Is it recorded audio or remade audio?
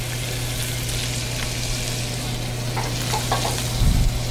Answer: recorded